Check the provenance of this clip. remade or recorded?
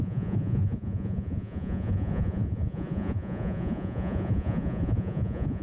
remade